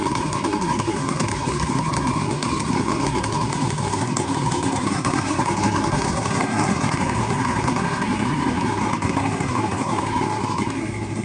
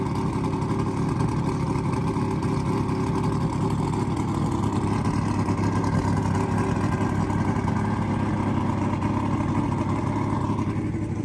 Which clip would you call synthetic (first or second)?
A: first